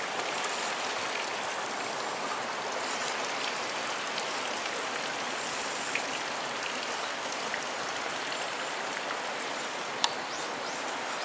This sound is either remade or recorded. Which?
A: recorded